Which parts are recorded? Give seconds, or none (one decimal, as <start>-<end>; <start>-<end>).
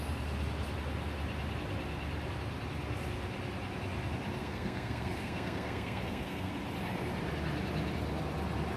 0.0-4.4; 6.5-8.8